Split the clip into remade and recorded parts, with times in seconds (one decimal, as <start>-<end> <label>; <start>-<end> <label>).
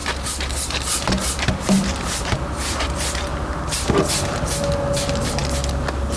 0.0-2.8 remade; 2.8-5.4 recorded; 5.4-6.2 remade